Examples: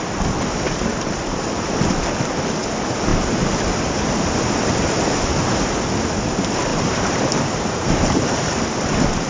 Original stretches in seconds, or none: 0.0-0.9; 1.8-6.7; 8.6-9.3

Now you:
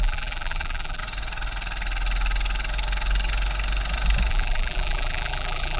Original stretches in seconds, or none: 1.0-4.3

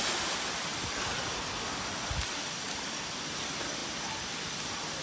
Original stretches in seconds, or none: 0.0-5.0